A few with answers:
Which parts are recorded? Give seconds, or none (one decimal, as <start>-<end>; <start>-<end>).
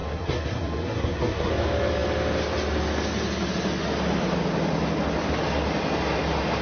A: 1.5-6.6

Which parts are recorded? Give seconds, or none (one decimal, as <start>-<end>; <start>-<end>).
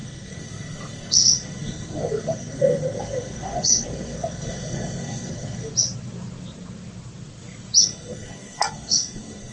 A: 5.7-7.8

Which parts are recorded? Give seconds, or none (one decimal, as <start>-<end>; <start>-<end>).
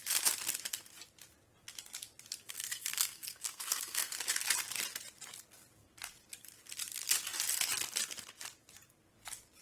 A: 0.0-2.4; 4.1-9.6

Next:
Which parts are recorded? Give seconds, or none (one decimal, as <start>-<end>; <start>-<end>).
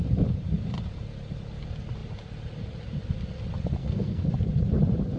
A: 0.0-3.8; 4.3-5.2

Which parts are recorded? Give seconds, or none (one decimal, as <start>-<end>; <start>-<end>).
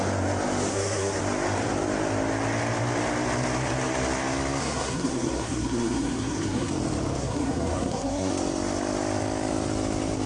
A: 0.0-0.7; 1.2-4.6; 6.7-7.2; 8.3-10.3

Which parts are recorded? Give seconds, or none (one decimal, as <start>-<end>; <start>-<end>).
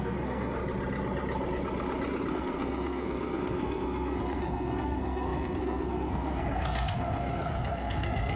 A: 0.6-2.3